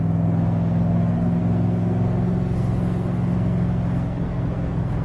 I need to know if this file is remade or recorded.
remade